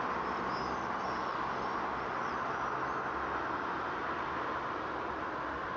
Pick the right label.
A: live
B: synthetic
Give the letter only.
A